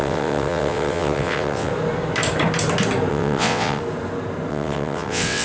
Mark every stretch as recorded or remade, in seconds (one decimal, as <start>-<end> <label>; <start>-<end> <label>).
0.0-1.7 remade; 1.7-3.1 recorded; 3.1-3.8 remade; 3.8-4.5 recorded; 4.5-5.4 remade